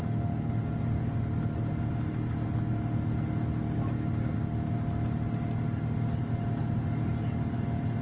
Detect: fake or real real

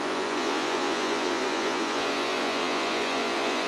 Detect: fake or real fake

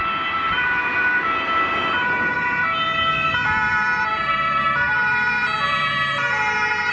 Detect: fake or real real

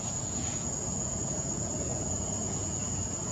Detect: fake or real fake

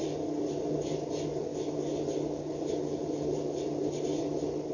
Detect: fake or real real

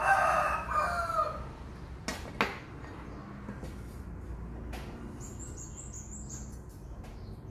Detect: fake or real real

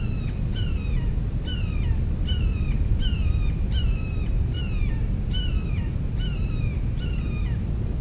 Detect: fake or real real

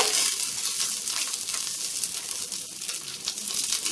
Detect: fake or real real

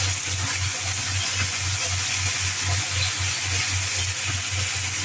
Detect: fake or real fake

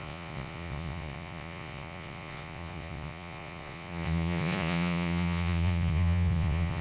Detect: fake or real fake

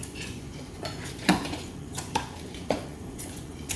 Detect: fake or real fake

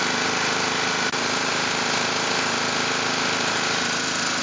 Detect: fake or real real